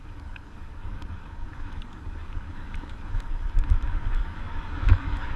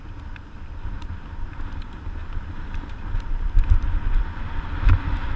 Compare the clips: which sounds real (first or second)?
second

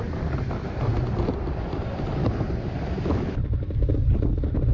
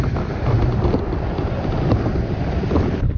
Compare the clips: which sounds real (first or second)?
first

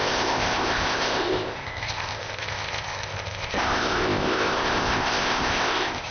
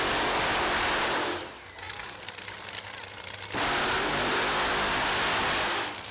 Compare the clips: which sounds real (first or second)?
second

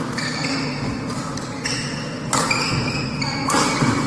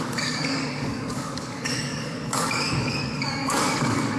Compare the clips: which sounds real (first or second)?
first